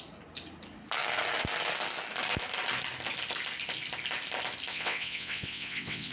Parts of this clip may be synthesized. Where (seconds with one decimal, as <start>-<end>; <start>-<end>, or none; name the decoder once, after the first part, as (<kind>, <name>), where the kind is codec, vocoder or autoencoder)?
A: 4.7-6.1 (vocoder, WaveNeXt)